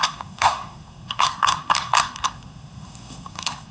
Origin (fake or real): fake